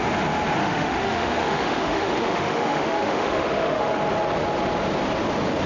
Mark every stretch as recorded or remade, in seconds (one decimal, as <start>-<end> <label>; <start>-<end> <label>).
0.0-0.6 recorded; 0.6-4.0 remade; 4.0-5.7 recorded